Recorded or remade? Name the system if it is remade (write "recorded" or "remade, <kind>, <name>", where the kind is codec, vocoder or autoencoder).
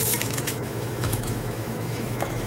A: remade, autoencoder, DAC-VAE